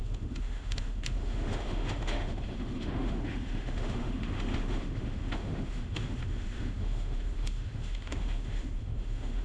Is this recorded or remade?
remade